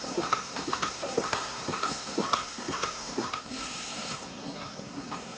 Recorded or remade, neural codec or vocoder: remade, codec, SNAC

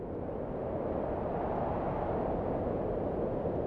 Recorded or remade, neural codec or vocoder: recorded